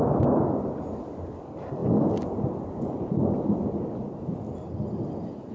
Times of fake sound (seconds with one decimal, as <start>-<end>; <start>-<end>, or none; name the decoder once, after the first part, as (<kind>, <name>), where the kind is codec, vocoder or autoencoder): none